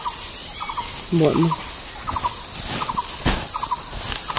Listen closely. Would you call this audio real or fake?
real